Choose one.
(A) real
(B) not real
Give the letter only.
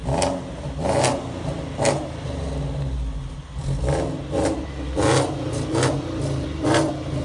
A